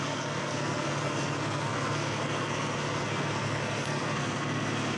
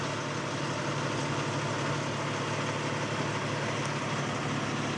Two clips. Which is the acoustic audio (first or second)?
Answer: second